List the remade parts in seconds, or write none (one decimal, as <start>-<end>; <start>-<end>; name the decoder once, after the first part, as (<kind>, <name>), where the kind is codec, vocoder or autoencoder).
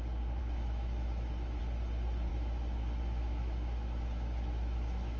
0.4-1.6 (autoencoder, DAC-VAE); 2.3-5.2